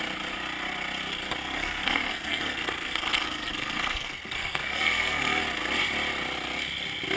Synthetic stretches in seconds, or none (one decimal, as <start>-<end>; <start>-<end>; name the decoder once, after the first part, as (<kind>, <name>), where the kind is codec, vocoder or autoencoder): 1.4-5.4 (codec, SNAC)